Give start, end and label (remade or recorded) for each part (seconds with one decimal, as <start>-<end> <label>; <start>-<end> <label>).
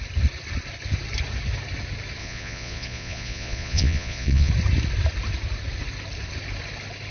0.0-2.2 recorded; 2.2-4.5 remade; 4.5-7.1 recorded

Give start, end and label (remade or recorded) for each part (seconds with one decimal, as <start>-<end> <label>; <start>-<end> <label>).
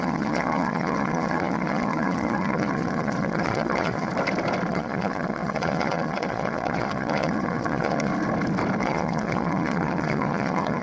0.0-4.1 remade; 4.1-4.7 recorded; 4.7-8.1 remade; 8.1-8.8 recorded; 8.8-10.8 remade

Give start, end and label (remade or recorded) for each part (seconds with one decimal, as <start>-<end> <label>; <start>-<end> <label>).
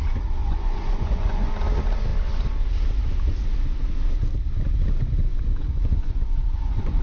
0.0-0.4 recorded; 0.4-1.5 remade; 1.5-5.3 recorded; 5.3-7.0 remade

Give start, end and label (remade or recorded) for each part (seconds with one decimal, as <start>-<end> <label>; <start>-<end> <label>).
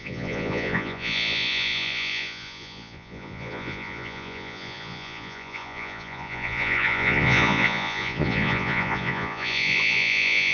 0.0-10.5 remade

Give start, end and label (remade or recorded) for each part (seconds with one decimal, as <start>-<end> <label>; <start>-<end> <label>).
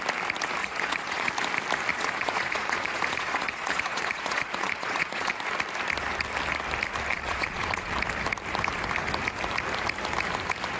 0.0-0.6 recorded; 0.6-1.3 remade; 1.3-1.9 recorded; 1.9-5.3 remade; 5.3-7.1 recorded; 7.1-8.0 remade; 8.0-10.8 recorded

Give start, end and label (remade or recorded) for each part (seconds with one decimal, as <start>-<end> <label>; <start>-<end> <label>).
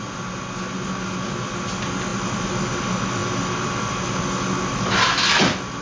0.0-5.8 recorded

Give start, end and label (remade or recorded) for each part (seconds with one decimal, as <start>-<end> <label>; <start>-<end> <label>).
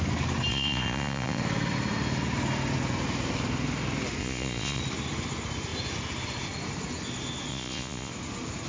0.0-0.5 recorded; 0.5-1.4 remade; 1.4-4.2 recorded; 4.2-4.8 remade; 4.8-7.5 recorded; 7.5-8.1 remade; 8.1-8.7 recorded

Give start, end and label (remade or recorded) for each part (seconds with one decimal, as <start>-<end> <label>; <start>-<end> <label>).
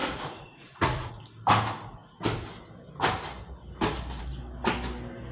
0.0-1.1 remade; 1.1-5.3 recorded